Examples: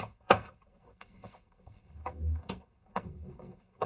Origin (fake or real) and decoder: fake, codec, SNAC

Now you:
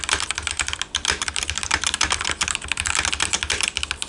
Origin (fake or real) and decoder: real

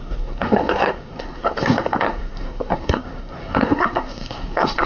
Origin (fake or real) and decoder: fake, codec, SNAC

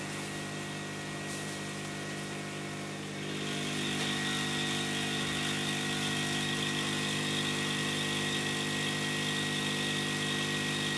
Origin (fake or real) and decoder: real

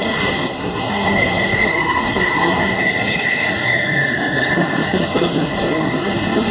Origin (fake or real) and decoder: fake, codec, SNAC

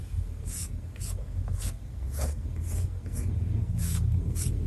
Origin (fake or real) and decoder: fake, codec, SNAC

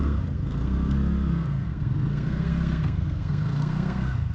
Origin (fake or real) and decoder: fake, codec, SNAC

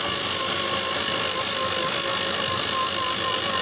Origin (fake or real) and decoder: real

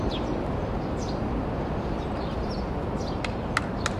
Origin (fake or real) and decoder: real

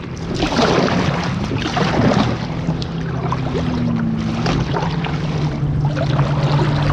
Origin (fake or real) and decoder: real